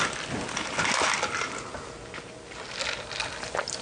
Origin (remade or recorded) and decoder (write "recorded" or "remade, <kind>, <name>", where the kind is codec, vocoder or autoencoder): recorded